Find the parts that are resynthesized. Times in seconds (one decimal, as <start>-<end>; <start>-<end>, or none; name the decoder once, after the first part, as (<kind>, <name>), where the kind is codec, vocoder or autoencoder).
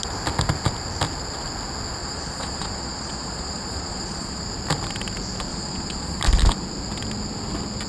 2.0-4.4 (vocoder, Vocos); 5.5-6.2